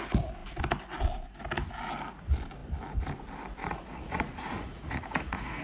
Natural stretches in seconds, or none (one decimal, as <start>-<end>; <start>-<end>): 0.0-3.6